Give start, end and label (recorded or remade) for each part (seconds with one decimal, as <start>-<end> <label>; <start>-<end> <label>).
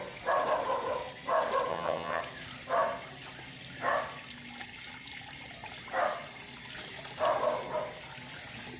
0.0-1.7 recorded; 1.7-2.2 remade; 2.2-8.8 recorded